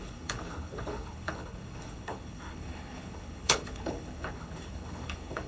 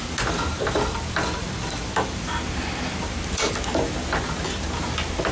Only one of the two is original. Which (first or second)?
second